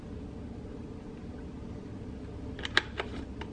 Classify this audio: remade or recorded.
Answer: recorded